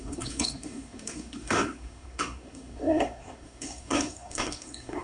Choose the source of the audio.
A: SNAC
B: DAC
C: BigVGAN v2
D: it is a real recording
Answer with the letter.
A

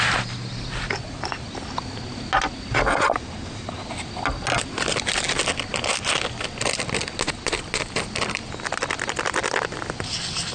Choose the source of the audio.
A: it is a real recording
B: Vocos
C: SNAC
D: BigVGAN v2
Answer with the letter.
A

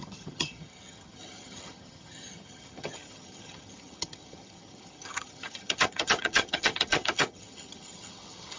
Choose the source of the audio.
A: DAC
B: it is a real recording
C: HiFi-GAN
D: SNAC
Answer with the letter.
C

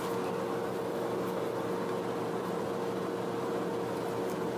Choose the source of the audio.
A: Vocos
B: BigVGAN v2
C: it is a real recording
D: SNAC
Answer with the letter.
C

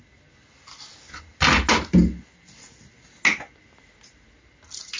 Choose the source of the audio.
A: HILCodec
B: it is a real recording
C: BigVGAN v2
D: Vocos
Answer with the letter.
B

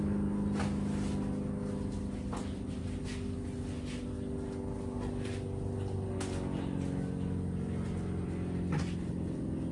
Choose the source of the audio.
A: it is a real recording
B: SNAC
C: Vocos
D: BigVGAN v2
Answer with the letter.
A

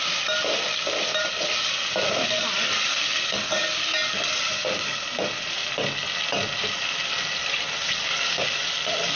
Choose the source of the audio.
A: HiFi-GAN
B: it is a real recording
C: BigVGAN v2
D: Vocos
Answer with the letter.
B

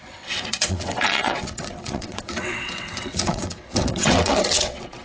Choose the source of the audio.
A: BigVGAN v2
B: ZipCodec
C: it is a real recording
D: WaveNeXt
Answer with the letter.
D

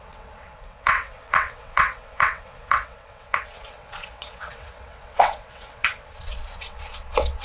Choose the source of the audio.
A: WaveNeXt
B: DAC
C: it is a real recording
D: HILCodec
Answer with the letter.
A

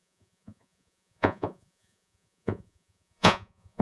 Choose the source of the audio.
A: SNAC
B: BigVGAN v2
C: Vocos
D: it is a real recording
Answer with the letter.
C